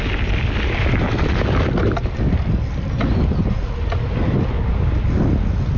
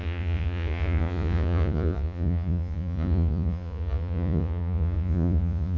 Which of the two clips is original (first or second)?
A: first